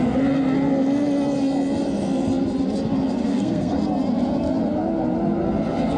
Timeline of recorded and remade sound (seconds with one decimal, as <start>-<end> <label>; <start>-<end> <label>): 0.0-3.3 recorded; 3.3-3.8 remade; 3.8-6.0 recorded